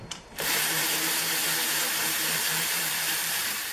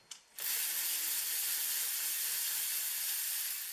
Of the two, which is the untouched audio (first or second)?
second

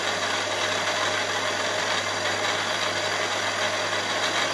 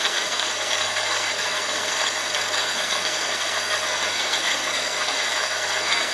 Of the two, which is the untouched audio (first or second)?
first